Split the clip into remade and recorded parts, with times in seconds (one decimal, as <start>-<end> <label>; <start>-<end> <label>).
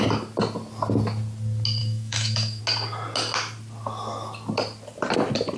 0.0-1.8 recorded; 1.8-2.6 remade; 2.6-5.6 recorded